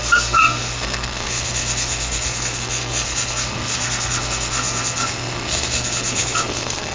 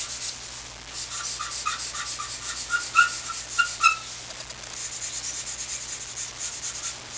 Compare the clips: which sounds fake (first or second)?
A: first